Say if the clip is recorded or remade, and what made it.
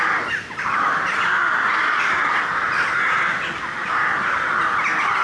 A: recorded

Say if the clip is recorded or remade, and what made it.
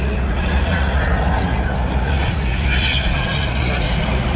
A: remade, vocoder, Vocos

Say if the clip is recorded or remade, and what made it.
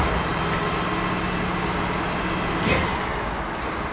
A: recorded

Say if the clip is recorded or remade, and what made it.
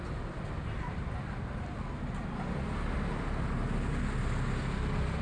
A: recorded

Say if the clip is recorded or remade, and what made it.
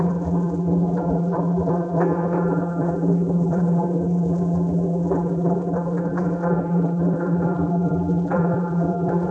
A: remade, vocoder, BigVGAN v2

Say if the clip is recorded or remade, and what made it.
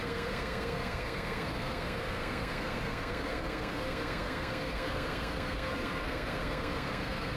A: remade, codec, SNAC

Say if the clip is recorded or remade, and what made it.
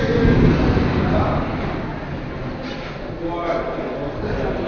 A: recorded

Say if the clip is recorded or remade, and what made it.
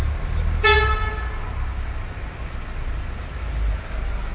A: recorded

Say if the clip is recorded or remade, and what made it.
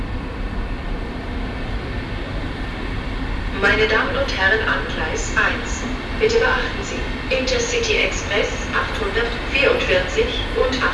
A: recorded